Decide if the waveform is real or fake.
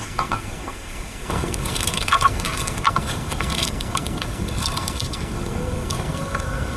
fake